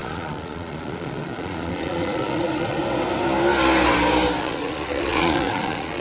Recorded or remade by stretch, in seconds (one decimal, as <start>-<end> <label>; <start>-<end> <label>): 0.0-2.8 remade; 2.8-4.4 recorded; 4.4-6.0 remade